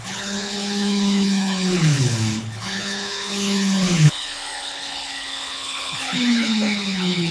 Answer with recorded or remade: remade